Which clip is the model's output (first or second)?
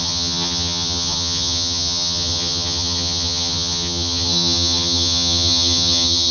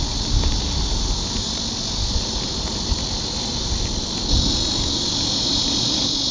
first